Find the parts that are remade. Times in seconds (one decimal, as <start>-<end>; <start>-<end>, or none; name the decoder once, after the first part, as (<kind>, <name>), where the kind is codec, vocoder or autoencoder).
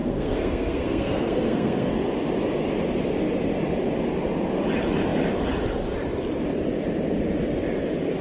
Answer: 0.0-1.9 (codec, SNAC)